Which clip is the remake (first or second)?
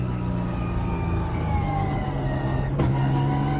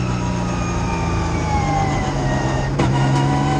first